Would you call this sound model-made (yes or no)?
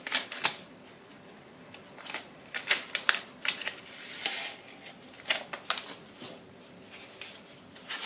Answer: no